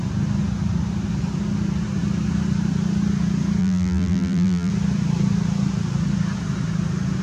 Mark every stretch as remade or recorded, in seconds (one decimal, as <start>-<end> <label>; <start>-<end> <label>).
0.0-3.6 recorded; 3.6-4.7 remade; 4.7-7.2 recorded